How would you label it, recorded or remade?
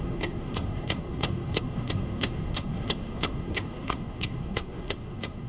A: remade